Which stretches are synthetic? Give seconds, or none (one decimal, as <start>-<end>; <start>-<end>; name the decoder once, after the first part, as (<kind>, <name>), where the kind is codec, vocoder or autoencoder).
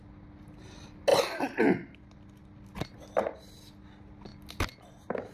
none